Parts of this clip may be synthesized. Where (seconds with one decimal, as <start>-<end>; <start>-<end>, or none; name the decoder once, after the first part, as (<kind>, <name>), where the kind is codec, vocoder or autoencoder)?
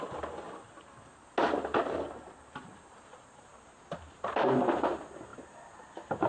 1.7-3.4 (vocoder, BigVGAN v2)